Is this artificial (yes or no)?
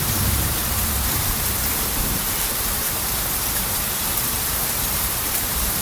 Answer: yes